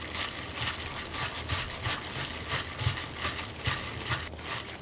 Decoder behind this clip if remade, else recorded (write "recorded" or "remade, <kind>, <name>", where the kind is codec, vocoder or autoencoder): recorded